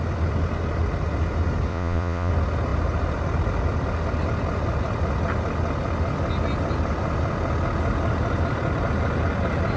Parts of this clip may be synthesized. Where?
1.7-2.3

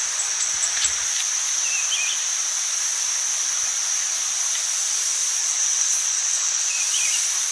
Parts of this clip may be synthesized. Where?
5.4-6.8

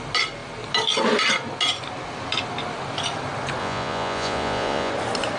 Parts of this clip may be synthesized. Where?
3.6-4.9